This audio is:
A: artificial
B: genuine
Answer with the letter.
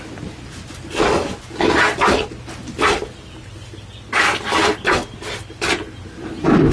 B